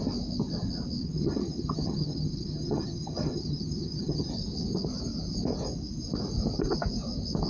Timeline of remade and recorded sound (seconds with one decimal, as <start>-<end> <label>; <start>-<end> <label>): 0.0-1.0 recorded; 1.0-4.3 remade; 4.3-7.5 recorded